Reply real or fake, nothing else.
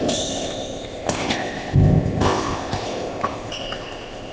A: fake